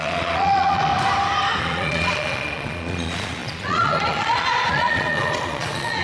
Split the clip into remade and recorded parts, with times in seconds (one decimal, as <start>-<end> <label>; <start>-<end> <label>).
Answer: 0.0-0.9 remade; 0.9-1.6 recorded; 1.6-6.0 remade

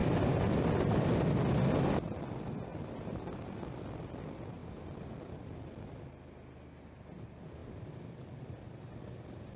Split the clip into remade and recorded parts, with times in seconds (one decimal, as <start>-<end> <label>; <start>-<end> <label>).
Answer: 0.0-9.6 recorded

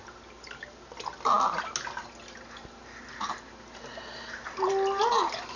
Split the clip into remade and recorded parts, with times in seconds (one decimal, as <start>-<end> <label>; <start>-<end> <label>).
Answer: 0.0-5.6 recorded

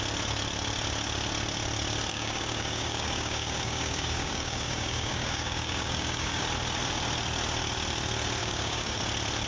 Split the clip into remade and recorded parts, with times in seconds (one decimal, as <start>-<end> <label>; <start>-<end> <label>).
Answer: 0.0-2.1 recorded; 2.1-6.4 remade; 6.4-8.4 recorded; 8.4-9.0 remade; 9.0-9.5 recorded